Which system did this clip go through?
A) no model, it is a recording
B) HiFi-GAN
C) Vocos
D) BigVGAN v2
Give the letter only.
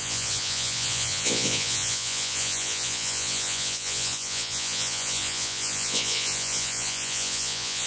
C